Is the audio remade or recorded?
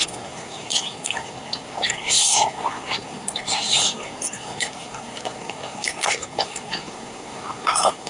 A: remade